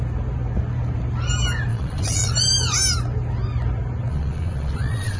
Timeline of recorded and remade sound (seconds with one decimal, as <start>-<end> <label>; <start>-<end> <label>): 0.0-1.7 recorded; 1.7-2.3 remade; 2.3-4.1 recorded; 4.1-5.2 remade